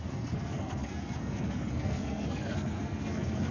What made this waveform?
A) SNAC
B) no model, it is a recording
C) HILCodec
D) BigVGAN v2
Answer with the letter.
A